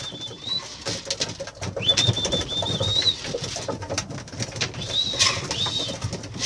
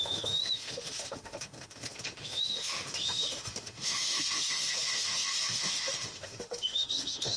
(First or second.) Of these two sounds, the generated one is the second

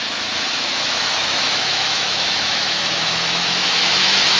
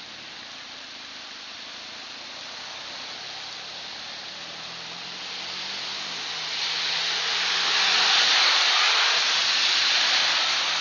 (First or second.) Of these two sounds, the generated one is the first